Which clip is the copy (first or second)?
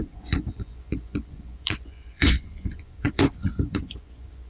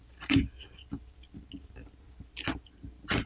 first